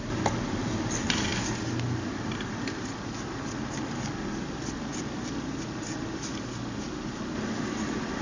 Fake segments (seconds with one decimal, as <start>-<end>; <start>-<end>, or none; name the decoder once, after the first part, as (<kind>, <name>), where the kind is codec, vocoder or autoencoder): none